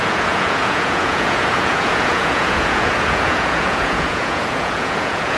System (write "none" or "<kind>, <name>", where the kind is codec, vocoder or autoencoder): vocoder, Vocos